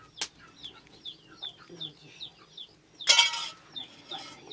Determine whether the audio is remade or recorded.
recorded